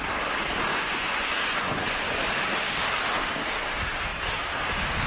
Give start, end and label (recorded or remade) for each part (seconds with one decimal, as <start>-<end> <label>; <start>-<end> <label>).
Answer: 0.0-0.7 recorded; 0.7-2.2 remade; 2.2-5.1 recorded